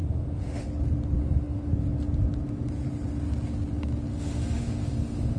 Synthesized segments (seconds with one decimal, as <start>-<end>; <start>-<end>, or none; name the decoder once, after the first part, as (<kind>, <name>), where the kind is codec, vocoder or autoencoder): 0.0-0.7 (autoencoder, DAC-VAE); 1.2-1.7; 4.1-5.4